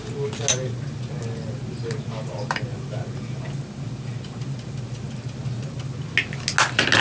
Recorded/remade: recorded